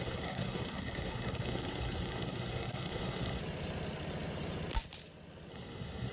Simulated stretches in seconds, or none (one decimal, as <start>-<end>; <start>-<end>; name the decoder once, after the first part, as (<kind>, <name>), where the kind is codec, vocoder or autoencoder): 0.0-3.4 (codec, SNAC); 5.5-6.1